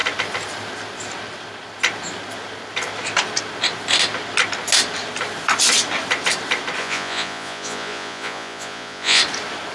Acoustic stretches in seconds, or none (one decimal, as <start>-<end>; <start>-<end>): 0.0-6.8; 9.2-9.7